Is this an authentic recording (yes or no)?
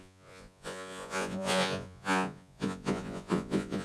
no